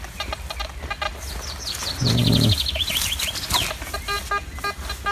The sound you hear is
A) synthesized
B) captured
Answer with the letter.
B